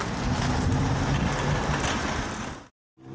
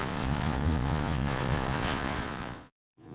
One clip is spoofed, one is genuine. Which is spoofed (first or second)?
second